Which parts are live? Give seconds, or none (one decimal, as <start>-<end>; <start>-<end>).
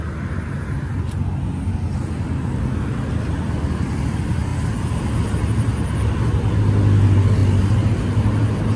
0.0-8.8